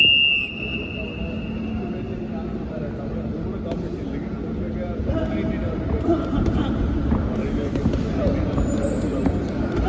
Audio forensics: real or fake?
real